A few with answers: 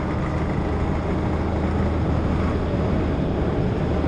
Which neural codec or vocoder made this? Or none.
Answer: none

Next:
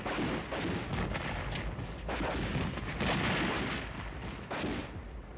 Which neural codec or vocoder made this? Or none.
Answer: none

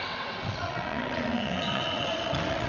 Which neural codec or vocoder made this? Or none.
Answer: vocoder, WaveNeXt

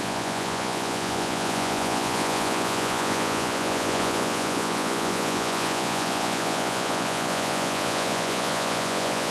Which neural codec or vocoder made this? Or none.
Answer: vocoder, Vocos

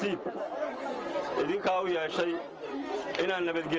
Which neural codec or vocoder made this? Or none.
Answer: none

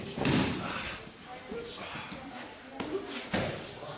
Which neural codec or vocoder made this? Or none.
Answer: none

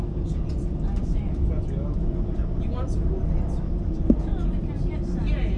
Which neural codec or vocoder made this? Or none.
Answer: none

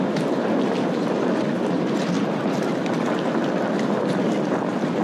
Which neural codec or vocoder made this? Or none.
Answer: none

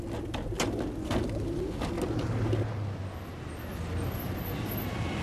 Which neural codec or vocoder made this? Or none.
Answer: none